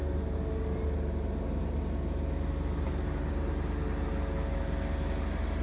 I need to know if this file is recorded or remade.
recorded